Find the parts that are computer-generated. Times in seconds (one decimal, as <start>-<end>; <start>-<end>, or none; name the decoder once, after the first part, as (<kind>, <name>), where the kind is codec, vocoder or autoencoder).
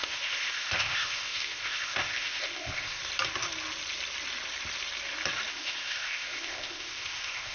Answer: 0.0-3.0 (codec, ZipCodec); 5.5-7.5